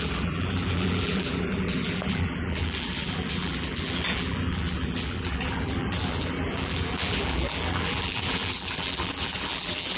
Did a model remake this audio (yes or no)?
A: yes